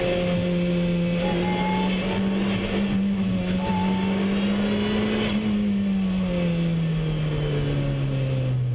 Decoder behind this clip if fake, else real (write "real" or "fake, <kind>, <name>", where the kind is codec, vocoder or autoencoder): real